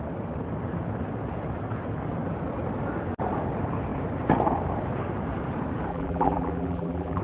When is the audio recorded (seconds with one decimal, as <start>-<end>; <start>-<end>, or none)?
0.0-5.9